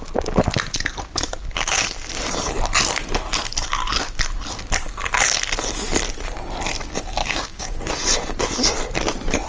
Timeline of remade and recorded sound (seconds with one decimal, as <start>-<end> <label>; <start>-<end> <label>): 0.0-7.2 recorded; 7.2-7.9 remade; 7.9-9.5 recorded